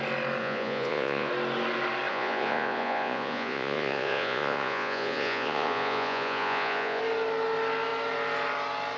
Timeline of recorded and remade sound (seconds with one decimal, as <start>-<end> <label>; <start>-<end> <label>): 0.0-0.4 recorded; 0.4-1.3 remade; 1.3-2.1 recorded; 2.1-7.0 remade; 7.0-9.0 recorded

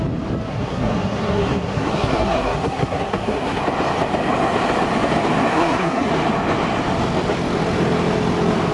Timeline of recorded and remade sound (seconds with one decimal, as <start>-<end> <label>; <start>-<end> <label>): 0.0-0.5 recorded; 0.5-3.6 remade; 3.6-5.5 recorded; 5.5-6.1 remade; 6.1-8.7 recorded

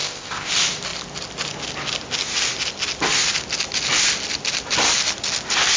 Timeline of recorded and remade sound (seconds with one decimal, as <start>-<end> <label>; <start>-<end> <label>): 0.0-0.5 remade; 0.5-5.8 recorded